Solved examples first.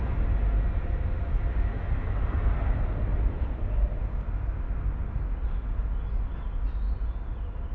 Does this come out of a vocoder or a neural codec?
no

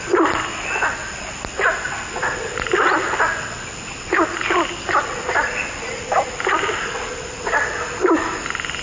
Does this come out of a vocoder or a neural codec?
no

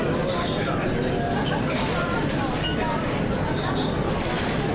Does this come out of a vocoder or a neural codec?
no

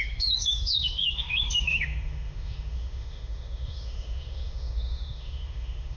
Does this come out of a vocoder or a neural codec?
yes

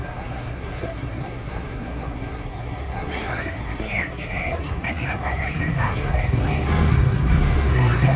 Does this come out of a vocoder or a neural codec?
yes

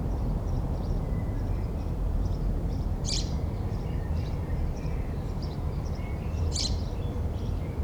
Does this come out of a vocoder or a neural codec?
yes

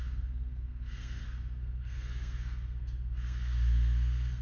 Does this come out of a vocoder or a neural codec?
yes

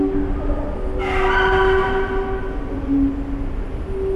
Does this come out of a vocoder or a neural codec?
no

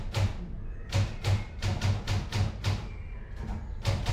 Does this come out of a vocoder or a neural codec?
no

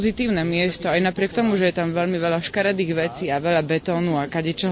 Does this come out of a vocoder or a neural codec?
no